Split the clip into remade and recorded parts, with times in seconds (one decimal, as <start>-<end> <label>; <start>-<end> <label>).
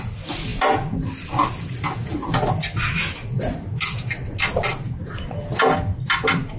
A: 0.0-6.6 recorded